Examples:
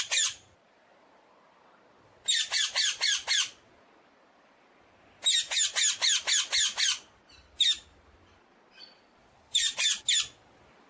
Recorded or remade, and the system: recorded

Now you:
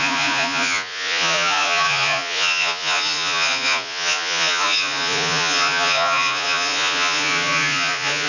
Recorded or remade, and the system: remade, vocoder, Vocos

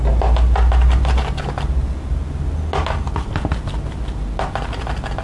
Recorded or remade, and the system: recorded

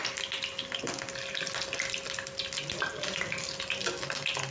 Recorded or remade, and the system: recorded